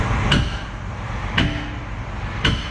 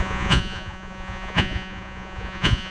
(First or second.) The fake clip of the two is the second